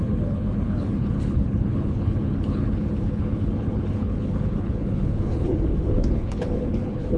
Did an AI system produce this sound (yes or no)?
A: yes